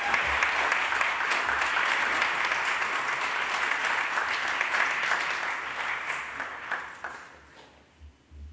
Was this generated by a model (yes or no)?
no